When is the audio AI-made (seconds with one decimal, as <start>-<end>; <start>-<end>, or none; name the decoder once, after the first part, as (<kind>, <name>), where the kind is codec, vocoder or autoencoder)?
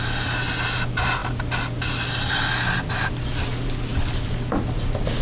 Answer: none